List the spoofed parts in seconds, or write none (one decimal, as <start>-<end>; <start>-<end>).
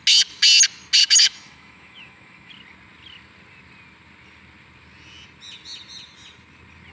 1.0-2.5